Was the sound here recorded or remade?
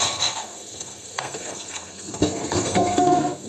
remade